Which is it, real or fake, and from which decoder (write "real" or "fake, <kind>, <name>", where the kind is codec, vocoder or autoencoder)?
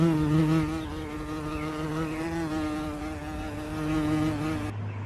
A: real